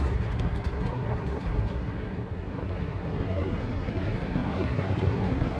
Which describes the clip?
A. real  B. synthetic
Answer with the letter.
B